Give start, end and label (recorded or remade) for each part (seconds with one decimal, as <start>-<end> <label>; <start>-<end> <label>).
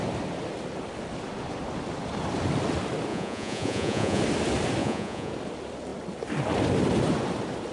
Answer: 0.0-3.1 recorded; 3.1-4.2 remade; 4.2-4.8 recorded; 4.8-5.3 remade; 5.3-7.7 recorded